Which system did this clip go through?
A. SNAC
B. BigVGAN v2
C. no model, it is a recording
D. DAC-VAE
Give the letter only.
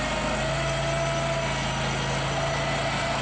C